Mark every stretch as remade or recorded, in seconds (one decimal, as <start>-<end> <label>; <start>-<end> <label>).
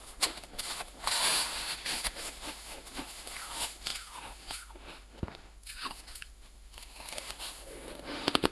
0.0-8.5 remade